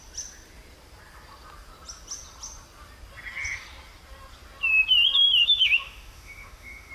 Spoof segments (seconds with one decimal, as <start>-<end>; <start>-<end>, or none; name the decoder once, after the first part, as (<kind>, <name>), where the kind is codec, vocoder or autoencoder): 5.4-6.9 (autoencoder, DAC-VAE)